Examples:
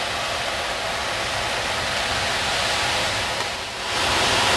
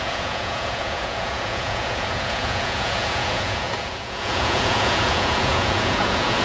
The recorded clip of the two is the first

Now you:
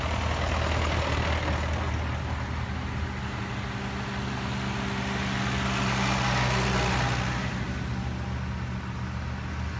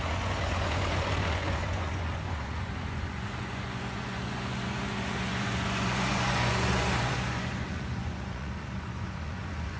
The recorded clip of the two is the first